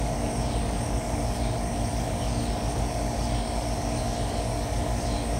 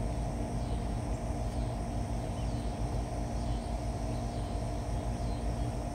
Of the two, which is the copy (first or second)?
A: first